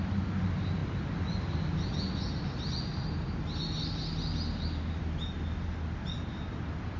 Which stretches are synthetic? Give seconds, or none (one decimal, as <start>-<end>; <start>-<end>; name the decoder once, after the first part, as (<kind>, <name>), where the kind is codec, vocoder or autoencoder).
none